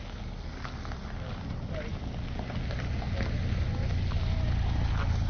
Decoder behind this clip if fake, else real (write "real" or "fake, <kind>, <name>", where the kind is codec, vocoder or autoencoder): real